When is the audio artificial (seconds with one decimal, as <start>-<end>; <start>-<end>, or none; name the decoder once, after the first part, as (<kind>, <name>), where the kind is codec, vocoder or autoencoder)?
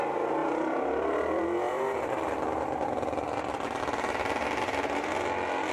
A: 0.4-3.8 (vocoder, BigVGAN v2)